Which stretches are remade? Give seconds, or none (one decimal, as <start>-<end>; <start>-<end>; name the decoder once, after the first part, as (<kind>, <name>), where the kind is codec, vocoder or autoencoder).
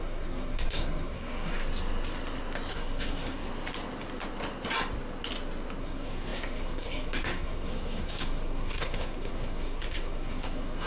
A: 0.0-1.5 (codec, SNAC); 2.7-3.5; 5.8-10.9